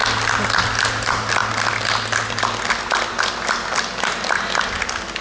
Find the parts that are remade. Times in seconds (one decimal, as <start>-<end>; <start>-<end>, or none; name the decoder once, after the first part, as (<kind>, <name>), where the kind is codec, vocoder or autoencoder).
none